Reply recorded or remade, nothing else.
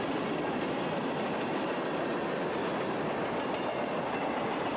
recorded